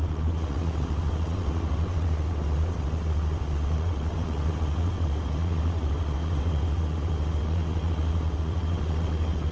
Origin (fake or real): fake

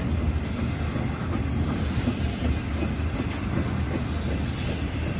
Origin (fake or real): real